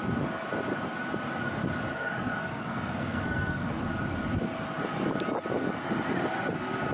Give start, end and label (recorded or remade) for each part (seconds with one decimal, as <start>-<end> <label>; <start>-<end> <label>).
0.0-1.9 recorded; 1.9-3.8 remade; 3.8-6.9 recorded